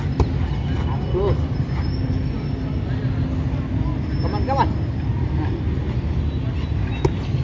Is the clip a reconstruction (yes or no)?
no